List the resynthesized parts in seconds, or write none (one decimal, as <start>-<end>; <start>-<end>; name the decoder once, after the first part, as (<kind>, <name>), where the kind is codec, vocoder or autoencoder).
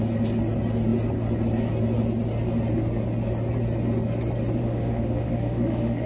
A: 4.6-6.1 (autoencoder, DAC-VAE)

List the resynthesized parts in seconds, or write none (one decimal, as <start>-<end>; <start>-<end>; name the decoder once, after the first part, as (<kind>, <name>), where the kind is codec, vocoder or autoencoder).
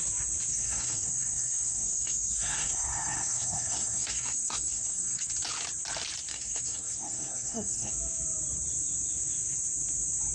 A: 0.5-5.3 (codec, SNAC); 6.3-7.9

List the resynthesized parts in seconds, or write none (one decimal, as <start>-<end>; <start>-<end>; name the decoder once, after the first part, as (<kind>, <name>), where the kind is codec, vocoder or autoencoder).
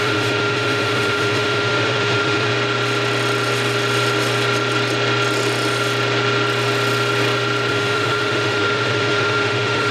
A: 0.0-2.5 (autoencoder, DAC-VAE); 7.7-9.9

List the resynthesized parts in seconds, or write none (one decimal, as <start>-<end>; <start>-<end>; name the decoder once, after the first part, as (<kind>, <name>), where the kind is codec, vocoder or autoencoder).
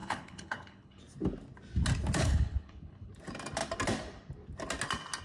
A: 0.0-1.0 (codec, HILCodec); 2.2-3.1